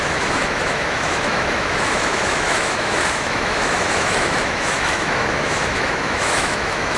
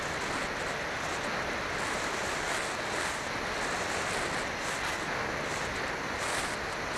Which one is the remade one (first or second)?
first